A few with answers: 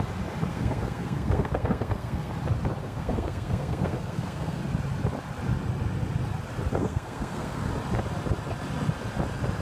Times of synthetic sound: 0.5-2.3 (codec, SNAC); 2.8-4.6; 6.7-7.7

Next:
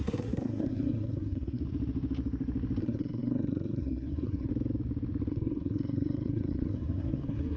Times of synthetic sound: 0.0-1.6 (codec, SNAC); 2.8-4.5; 5.3-7.6

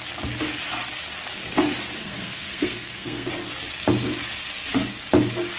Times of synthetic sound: 2.0-3.3 (codec, SNAC)

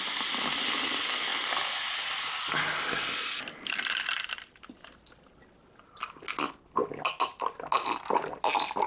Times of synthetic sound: none

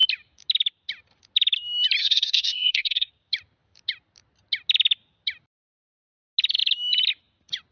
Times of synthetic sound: 2.0-3.1 (codec, SNAC)

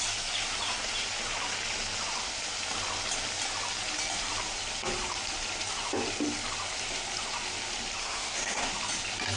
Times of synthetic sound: 8.0-8.7 (codec, SNAC)